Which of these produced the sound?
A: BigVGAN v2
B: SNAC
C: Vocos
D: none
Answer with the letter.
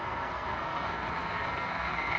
B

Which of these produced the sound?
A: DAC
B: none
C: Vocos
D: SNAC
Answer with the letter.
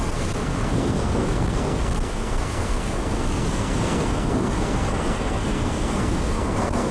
D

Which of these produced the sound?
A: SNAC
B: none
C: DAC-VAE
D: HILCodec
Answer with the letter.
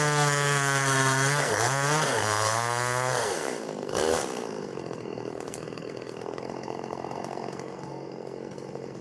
A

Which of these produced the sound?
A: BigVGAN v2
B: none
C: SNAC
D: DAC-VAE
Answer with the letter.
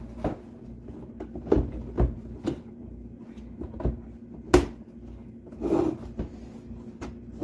B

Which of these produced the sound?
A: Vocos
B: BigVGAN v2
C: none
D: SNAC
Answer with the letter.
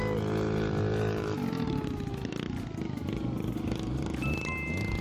C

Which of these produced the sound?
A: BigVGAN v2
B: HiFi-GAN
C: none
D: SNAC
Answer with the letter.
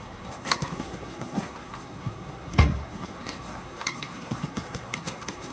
D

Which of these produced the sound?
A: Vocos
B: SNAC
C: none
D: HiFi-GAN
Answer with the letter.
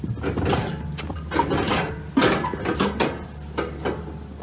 C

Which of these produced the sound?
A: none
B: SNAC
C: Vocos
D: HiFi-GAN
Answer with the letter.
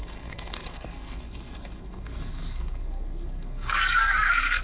B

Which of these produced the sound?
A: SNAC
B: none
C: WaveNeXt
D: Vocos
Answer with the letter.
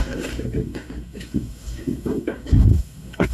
A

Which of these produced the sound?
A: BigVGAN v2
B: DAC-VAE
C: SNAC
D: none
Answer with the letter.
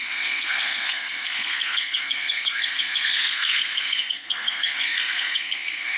C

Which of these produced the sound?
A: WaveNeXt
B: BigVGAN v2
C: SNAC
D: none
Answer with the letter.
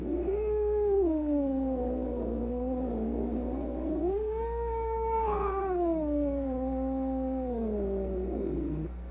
C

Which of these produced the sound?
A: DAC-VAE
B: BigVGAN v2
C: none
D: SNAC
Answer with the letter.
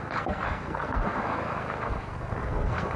D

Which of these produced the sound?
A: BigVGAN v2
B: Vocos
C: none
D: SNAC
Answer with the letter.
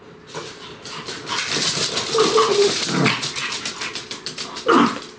C